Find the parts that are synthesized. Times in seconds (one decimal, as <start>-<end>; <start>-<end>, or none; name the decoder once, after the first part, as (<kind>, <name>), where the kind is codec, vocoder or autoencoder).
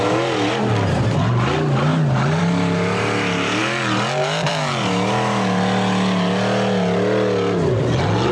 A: none